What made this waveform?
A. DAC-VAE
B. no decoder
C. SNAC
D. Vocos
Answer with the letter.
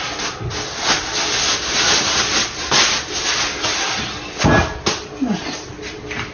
B